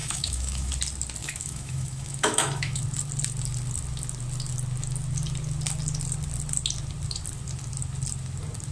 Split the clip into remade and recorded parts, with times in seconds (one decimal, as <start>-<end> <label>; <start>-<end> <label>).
0.0-0.7 remade; 0.7-1.2 recorded; 1.2-2.8 remade; 2.8-8.7 recorded